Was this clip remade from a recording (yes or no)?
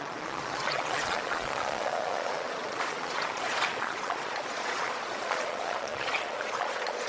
yes